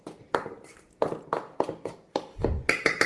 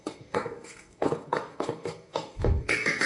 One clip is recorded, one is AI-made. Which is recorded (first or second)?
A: first